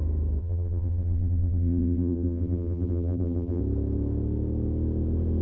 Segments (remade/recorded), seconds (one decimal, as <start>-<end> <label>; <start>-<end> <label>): 0.0-0.4 recorded; 0.4-3.6 remade; 3.6-5.4 recorded

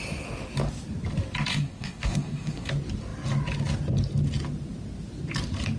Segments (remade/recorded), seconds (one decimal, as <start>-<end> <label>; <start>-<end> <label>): 0.0-1.5 recorded; 1.5-2.7 remade; 2.7-5.8 recorded

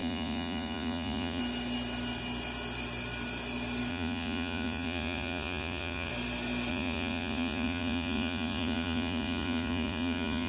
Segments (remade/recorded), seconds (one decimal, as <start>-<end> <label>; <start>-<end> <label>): 0.0-1.4 remade; 1.4-3.9 recorded; 3.9-6.1 remade; 6.1-6.7 recorded; 6.7-10.5 remade

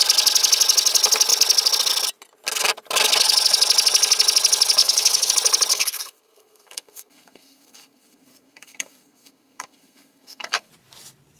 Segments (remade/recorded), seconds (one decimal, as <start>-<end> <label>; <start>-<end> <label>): 0.0-4.8 recorded; 4.8-5.3 remade; 5.3-5.7 recorded; 5.7-10.7 remade; 10.7-11.4 recorded